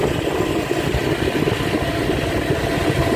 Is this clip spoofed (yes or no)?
no